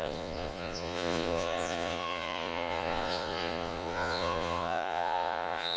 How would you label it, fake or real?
fake